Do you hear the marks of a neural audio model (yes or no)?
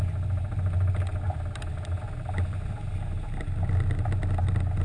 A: no